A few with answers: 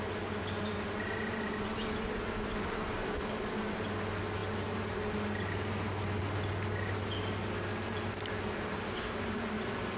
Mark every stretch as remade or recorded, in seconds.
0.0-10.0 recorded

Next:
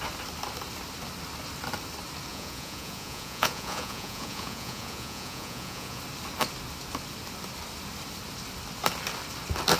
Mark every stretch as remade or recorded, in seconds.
0.0-2.3 recorded; 2.3-6.0 remade; 6.0-9.8 recorded

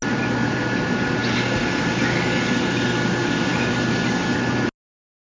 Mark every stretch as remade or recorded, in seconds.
0.0-5.4 recorded